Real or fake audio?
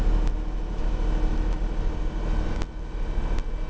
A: real